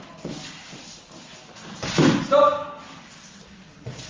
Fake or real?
real